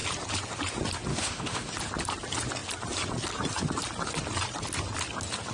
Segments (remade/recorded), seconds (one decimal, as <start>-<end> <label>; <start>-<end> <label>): 0.0-1.1 recorded; 1.1-1.7 remade; 1.7-5.5 recorded